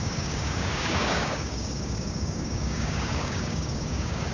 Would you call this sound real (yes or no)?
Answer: no